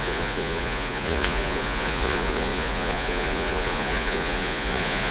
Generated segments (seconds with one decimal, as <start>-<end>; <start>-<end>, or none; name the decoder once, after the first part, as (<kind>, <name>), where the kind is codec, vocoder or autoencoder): 0.0-5.1 (vocoder, Vocos)